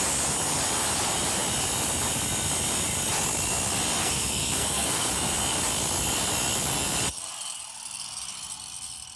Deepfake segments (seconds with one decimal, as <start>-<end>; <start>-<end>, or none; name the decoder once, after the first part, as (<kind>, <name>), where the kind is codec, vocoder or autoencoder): 4.0-5.1 (codec, SNAC)